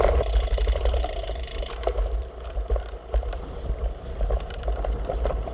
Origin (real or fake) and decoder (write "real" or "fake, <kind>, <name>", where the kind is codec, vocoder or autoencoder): fake, vocoder, BigVGAN v2